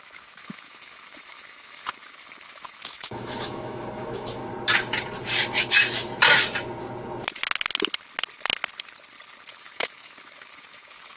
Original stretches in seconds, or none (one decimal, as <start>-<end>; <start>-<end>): 4.4-9.5